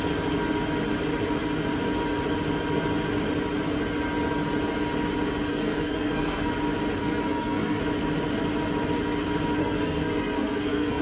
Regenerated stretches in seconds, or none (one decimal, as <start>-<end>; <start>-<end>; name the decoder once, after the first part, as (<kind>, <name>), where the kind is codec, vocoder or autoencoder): 5.5-6.5 (codec, SNAC); 7.0-7.8; 9.6-11.0